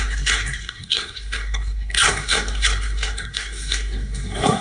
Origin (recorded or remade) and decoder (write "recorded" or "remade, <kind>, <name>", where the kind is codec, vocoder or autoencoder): remade, codec, SNAC